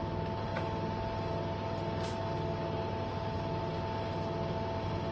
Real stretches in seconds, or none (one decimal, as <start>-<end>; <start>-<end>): 0.0-5.1